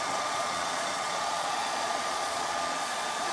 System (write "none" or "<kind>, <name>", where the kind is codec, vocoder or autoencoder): vocoder, Vocos